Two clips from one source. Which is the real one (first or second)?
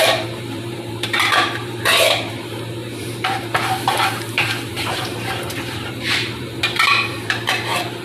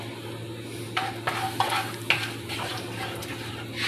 second